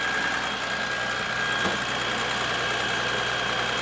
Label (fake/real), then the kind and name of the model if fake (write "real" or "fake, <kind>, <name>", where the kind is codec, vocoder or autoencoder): real